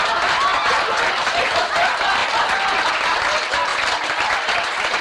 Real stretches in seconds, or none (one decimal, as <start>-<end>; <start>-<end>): 0.0-5.0